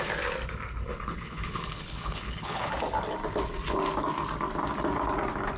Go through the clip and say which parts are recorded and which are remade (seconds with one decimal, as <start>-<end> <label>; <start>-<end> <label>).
0.0-0.9 recorded; 0.9-2.7 remade; 2.7-5.6 recorded